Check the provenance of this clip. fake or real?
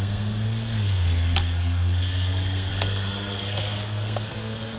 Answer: fake